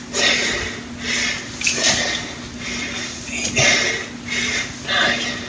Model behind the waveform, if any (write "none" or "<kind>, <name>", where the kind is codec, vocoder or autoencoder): none